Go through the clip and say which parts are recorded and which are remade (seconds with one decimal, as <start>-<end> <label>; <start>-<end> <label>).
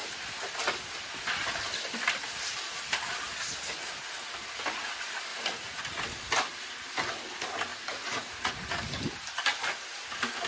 0.0-5.3 recorded; 5.3-5.8 remade; 5.8-7.7 recorded; 7.7-8.5 remade; 8.5-10.5 recorded